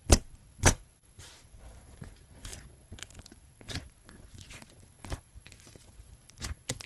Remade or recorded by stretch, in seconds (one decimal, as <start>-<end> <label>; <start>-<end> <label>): 0.0-6.9 remade